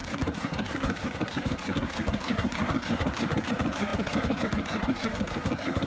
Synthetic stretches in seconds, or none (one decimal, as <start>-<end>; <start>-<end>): 0.0-5.9